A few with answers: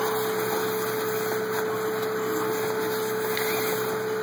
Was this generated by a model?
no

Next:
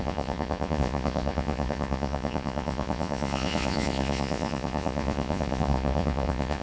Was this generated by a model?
yes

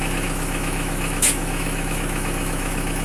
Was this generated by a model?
yes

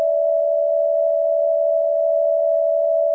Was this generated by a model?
yes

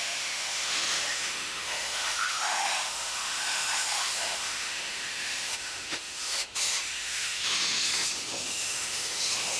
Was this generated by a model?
yes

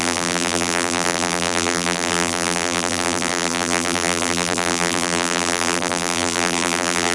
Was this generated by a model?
yes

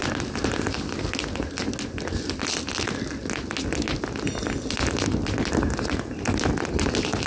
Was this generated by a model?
no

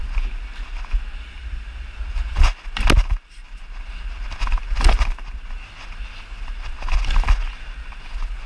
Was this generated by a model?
no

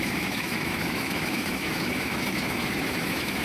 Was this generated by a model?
yes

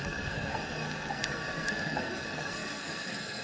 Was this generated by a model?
yes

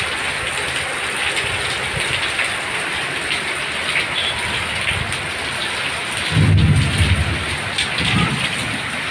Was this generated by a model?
no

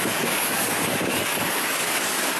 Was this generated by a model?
yes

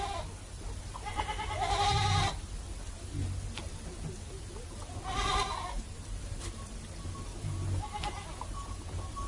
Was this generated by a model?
no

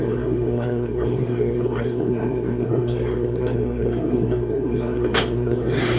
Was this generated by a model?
yes